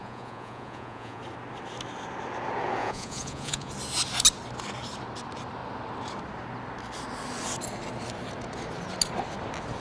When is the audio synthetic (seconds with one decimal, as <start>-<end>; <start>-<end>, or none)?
0.0-1.2; 2.8-3.7